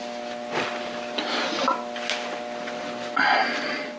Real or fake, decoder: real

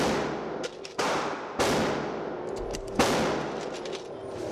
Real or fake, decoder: real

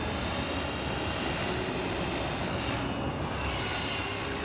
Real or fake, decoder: real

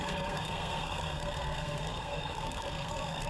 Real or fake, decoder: fake, codec, SNAC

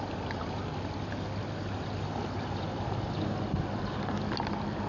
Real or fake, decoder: real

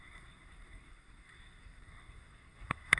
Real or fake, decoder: fake, codec, SNAC